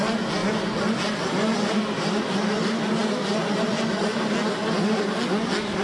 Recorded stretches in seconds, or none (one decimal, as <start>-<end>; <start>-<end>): 0.0-5.8